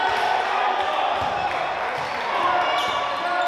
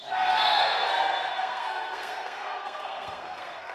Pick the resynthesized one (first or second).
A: second